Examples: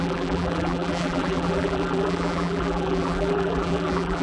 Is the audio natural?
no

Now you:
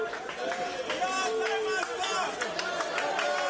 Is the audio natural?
yes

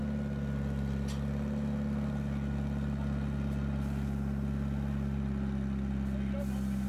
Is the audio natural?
yes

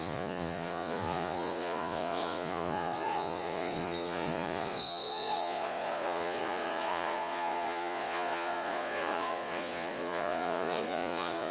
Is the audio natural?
no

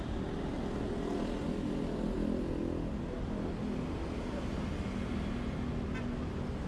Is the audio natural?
yes